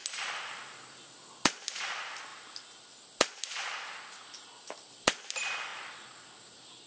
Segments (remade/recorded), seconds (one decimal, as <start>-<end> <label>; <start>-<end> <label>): 0.0-6.9 recorded